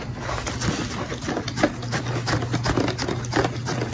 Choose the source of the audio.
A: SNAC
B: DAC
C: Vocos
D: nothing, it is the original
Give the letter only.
D